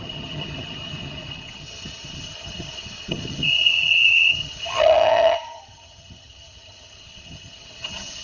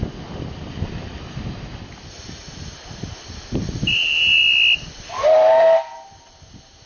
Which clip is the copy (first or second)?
first